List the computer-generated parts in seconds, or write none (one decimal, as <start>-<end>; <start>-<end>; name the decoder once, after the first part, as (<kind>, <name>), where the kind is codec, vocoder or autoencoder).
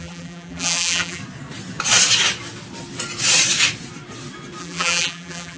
0.0-1.2 (vocoder, BigVGAN v2); 4.6-5.6